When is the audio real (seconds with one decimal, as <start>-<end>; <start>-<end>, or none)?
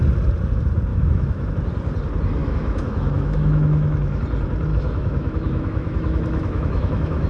0.0-0.9; 1.5-2.4; 4.2-4.7